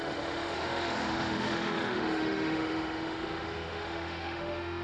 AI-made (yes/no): yes